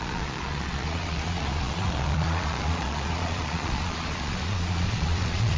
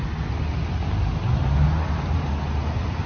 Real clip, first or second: second